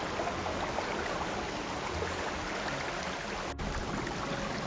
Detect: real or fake real